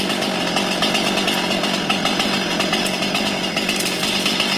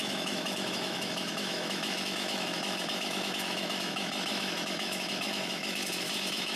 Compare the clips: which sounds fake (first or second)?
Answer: second